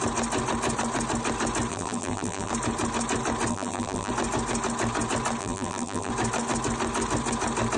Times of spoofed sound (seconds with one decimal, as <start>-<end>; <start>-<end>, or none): 1.7-2.5; 3.5-4.1; 5.4-6.1